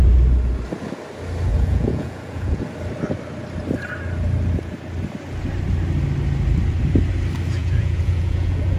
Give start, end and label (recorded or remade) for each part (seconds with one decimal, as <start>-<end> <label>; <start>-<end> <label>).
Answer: 0.0-1.5 recorded; 1.5-2.6 remade; 2.6-7.6 recorded; 7.6-8.8 remade